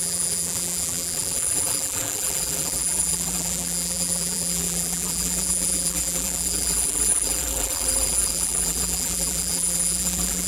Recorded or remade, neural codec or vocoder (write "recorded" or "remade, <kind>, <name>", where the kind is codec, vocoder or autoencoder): remade, vocoder, BigVGAN v2